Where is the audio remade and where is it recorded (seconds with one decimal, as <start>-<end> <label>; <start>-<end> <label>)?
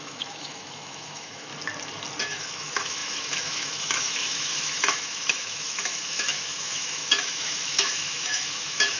0.0-1.5 remade; 1.5-2.2 recorded; 2.2-9.0 remade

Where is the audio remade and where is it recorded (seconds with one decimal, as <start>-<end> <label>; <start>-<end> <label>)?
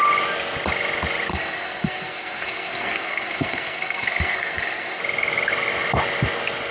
0.0-1.3 recorded; 1.3-5.0 remade; 5.0-6.7 recorded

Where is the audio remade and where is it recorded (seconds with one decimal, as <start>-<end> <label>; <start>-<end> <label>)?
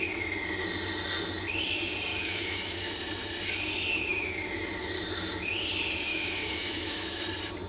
0.0-2.1 recorded; 2.1-2.9 remade; 2.9-6.1 recorded; 6.1-7.2 remade; 7.2-7.7 recorded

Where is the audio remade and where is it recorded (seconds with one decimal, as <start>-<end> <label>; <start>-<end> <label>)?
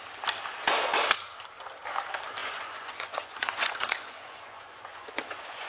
0.0-2.4 recorded; 2.4-5.7 remade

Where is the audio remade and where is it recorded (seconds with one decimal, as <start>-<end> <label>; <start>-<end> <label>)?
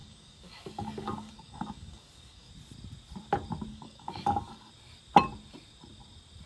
0.0-2.5 remade; 2.5-3.7 recorded; 3.7-4.7 remade; 4.7-6.5 recorded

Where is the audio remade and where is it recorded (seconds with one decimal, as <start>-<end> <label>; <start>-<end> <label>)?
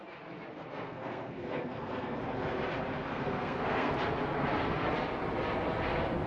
0.0-0.5 recorded; 0.5-2.2 remade; 2.2-3.1 recorded; 3.1-3.9 remade; 3.9-6.3 recorded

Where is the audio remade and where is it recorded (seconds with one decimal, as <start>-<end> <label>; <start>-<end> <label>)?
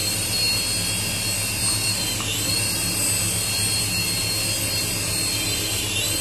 0.0-6.2 recorded